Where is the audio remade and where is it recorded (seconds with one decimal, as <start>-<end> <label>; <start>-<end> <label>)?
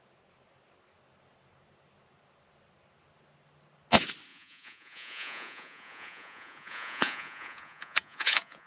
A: 0.0-4.3 recorded; 4.3-8.7 remade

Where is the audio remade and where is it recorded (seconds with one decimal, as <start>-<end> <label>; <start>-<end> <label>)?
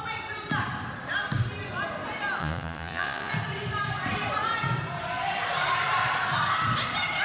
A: 0.0-2.4 recorded; 2.4-3.3 remade; 3.3-7.2 recorded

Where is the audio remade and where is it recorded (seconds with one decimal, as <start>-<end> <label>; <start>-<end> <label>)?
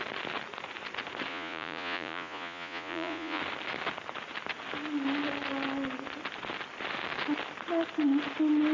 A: 0.0-1.3 recorded; 1.3-3.4 remade; 3.4-8.7 recorded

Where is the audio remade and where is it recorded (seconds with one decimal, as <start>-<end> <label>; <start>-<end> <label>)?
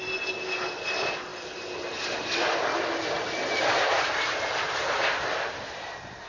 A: 0.0-6.3 recorded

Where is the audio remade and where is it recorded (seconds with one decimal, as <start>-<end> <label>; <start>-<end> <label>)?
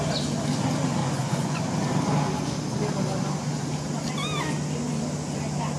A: 0.0-1.0 recorded; 1.0-1.6 remade; 1.6-5.8 recorded